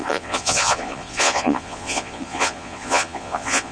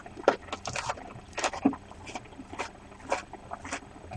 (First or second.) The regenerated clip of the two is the first